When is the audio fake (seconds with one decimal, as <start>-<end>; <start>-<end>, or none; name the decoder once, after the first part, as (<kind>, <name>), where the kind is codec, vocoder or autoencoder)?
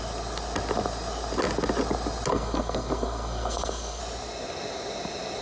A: 2.3-4.0 (codec, SNAC)